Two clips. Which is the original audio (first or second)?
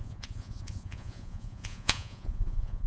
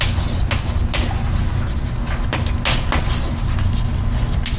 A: second